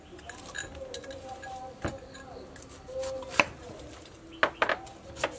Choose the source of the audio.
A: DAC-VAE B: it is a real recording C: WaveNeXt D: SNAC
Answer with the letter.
B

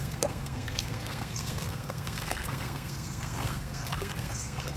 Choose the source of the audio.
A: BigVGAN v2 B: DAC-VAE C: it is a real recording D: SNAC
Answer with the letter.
D